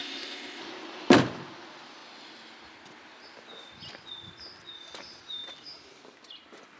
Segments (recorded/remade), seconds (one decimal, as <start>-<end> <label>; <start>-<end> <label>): 0.0-0.6 remade; 0.6-6.8 recorded